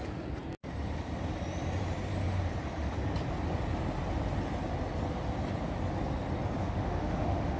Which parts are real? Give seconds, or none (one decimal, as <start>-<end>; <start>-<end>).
0.0-6.6